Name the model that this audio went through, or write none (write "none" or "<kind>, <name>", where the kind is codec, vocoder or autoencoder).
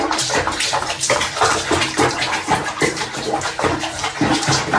vocoder, BigVGAN v2